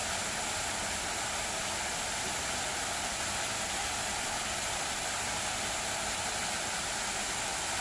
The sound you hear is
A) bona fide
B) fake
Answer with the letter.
A